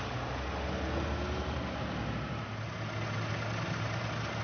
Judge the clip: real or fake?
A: real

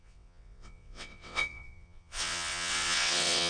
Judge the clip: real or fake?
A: fake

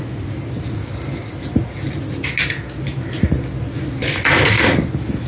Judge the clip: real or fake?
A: real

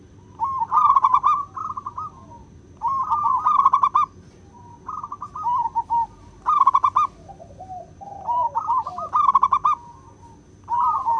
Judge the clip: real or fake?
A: real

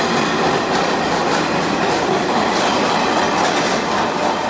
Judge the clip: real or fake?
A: real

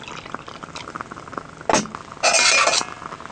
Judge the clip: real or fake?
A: real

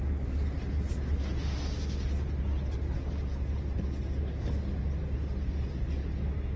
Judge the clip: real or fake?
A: real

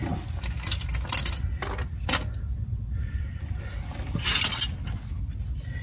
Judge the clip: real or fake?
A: real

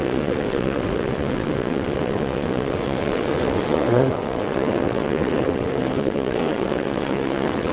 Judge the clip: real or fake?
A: fake